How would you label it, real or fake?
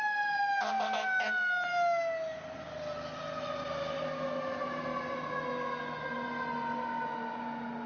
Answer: real